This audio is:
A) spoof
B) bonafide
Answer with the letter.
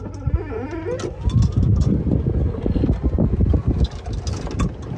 B